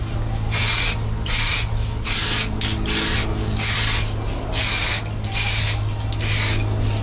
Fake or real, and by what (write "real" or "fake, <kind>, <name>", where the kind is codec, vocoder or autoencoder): real